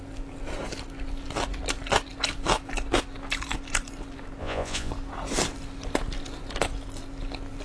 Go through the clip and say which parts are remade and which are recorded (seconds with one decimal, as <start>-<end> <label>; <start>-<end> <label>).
0.0-4.4 recorded; 4.4-4.9 remade; 4.9-7.6 recorded